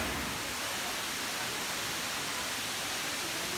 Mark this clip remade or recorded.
recorded